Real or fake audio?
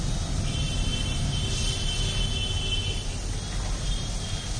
real